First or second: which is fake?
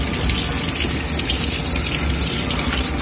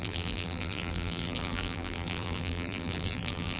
second